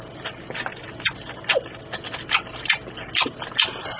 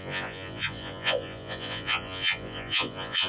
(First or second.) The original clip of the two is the first